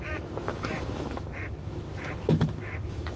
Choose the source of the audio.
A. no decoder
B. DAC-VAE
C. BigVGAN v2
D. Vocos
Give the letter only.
B